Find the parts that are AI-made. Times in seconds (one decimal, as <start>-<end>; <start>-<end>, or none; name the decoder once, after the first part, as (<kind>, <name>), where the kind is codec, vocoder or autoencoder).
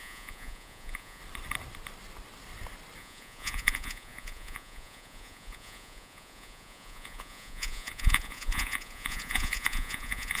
0.0-1.2 (vocoder, Vocos); 3.0-10.4